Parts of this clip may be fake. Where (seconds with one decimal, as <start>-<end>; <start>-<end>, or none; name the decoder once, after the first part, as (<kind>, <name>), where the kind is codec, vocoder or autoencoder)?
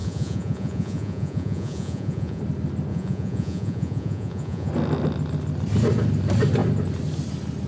0.0-2.4 (vocoder, Vocos); 2.9-4.7